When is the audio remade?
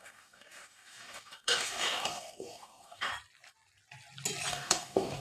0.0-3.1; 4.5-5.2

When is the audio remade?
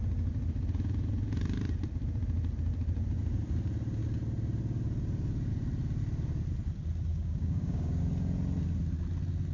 7.1-8.0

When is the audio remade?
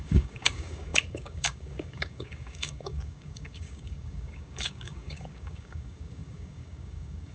0.0-7.3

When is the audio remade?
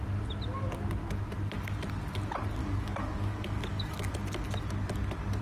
2.6-4.1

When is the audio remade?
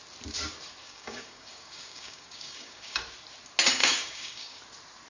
0.8-3.0; 3.8-4.6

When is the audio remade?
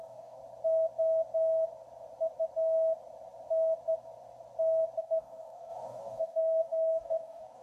0.0-0.4; 5.0-7.6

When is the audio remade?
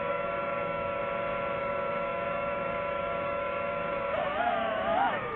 0.0-1.0; 1.6-5.4